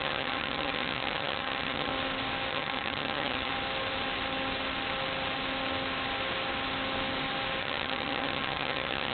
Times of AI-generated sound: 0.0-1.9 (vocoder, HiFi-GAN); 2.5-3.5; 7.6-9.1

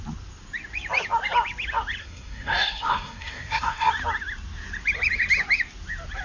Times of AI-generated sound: 2.0-3.9 (codec, SNAC)